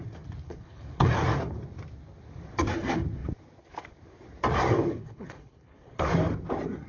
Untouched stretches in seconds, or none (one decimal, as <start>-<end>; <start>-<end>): 0.0-0.4; 1.1-4.7; 6.1-6.9

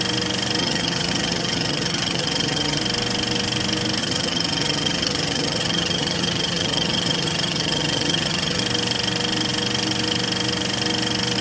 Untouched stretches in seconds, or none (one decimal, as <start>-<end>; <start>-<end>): 0.0-0.6; 2.8-4.0; 8.6-11.4

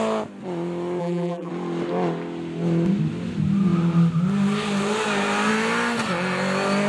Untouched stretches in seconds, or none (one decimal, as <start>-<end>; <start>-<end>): 0.0-1.0; 1.5-6.9

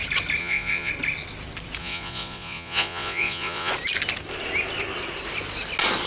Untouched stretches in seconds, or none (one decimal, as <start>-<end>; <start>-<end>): 0.0-0.4; 0.9-1.8; 3.7-6.1

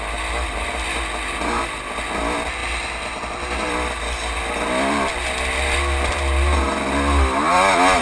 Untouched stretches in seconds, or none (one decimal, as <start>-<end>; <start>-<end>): 0.0-8.0

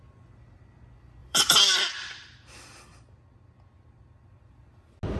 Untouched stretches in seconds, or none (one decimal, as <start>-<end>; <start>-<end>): 0.0-1.2; 1.8-5.2

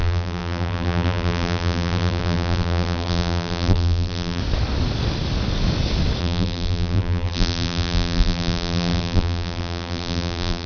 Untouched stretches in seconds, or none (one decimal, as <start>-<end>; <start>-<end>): 4.4-6.2